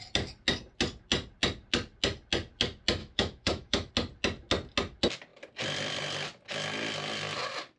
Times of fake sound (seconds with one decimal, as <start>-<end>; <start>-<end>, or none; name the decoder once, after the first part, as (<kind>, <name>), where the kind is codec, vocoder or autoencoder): 3.0-3.9 (autoencoder, DAC-VAE)